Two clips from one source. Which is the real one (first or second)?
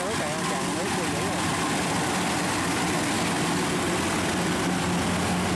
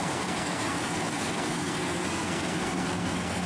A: first